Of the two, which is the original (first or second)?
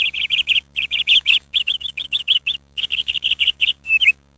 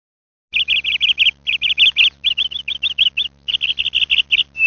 second